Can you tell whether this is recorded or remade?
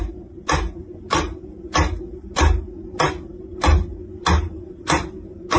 recorded